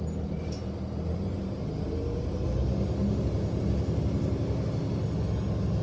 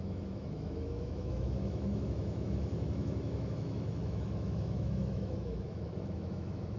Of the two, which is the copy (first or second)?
second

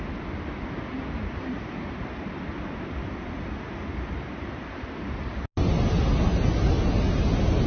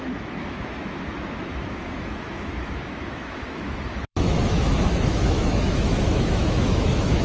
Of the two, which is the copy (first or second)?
second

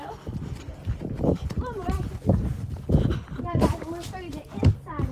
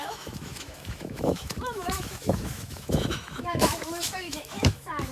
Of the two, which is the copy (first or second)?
second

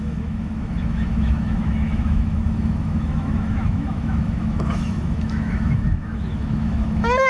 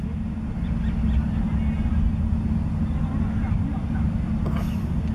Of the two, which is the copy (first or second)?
first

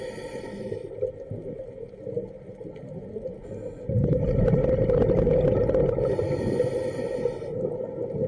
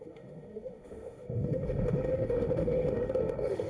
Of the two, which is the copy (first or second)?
second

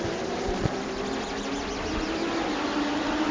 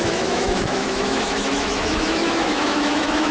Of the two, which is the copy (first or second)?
second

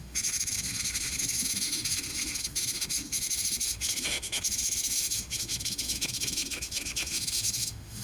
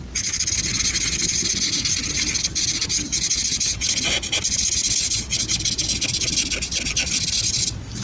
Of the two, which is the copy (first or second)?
first